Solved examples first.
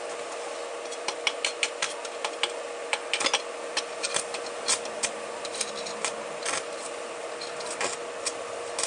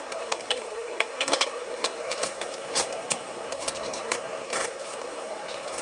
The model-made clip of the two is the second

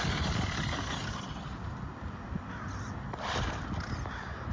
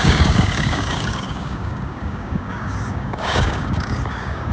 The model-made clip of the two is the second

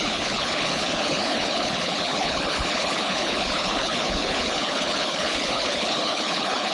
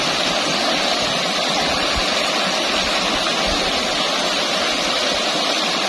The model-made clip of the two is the first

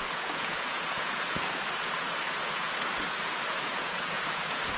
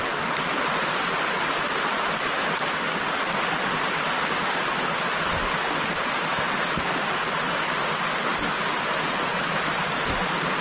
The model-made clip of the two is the first